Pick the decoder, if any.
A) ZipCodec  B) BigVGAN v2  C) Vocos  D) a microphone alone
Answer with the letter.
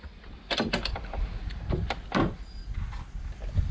D